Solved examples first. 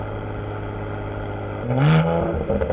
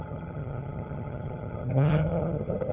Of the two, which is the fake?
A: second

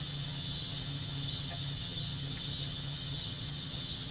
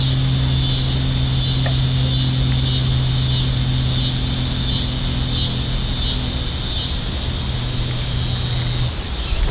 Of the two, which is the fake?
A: first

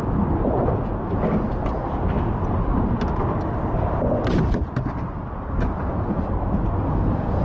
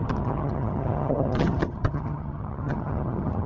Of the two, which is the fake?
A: second